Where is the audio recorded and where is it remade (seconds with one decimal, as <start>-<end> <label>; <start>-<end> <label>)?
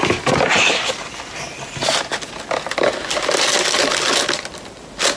0.0-5.2 recorded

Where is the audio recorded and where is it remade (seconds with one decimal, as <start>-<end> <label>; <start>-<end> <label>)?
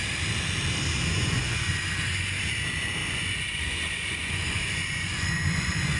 0.0-1.1 recorded; 1.1-2.4 remade; 2.4-3.0 recorded; 3.0-6.0 remade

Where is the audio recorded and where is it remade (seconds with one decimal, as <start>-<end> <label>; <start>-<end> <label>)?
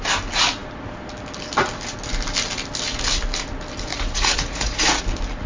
0.0-3.9 recorded; 3.9-5.0 remade; 5.0-5.5 recorded